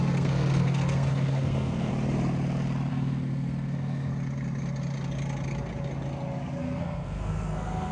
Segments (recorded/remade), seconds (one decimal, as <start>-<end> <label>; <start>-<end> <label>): 0.0-1.9 remade; 1.9-2.9 recorded; 2.9-4.1 remade; 4.1-6.6 recorded; 6.6-7.9 remade